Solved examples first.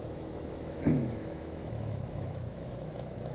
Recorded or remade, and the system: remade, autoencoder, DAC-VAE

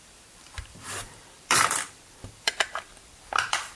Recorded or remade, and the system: remade, vocoder, BigVGAN v2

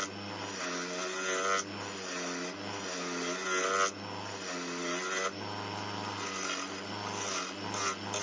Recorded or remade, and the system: recorded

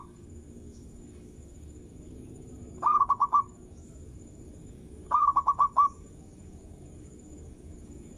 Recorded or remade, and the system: remade, codec, DAC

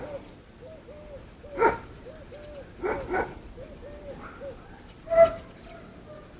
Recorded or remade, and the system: recorded